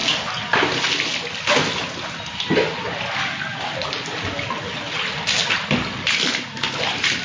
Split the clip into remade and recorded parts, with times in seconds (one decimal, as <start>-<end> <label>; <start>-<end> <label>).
0.0-7.2 recorded